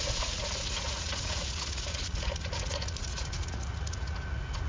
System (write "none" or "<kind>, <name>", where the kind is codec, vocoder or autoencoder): vocoder, Vocos